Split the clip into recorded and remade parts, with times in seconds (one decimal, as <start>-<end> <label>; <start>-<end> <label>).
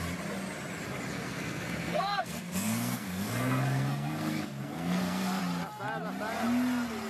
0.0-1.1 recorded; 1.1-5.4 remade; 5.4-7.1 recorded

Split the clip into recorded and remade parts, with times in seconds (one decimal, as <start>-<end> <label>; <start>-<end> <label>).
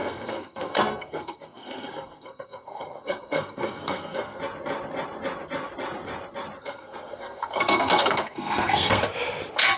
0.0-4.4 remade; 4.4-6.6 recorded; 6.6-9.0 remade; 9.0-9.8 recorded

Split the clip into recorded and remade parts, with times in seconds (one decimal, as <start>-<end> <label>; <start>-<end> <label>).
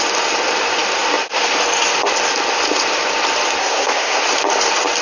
0.0-3.6 recorded; 3.6-4.2 remade; 4.2-5.0 recorded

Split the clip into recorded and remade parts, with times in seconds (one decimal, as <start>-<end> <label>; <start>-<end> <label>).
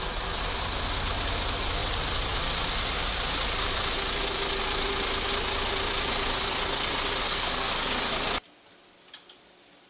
0.0-7.2 recorded; 7.2-7.9 remade; 7.9-9.9 recorded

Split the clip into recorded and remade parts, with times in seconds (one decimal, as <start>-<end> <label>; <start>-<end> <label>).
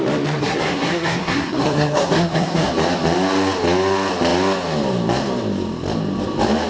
0.0-0.4 recorded; 0.4-2.7 remade; 2.7-6.7 recorded